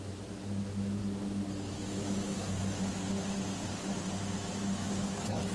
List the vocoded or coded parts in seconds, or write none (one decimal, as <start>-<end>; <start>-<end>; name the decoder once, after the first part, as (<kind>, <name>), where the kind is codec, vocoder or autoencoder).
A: 0.0-1.0 (autoencoder, DAC-VAE); 1.7-2.9; 4.5-5.5